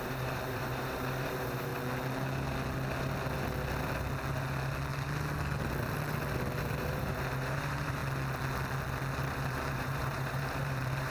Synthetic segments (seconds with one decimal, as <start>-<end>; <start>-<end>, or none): 0.0-1.7; 6.6-8.0; 9.2-11.1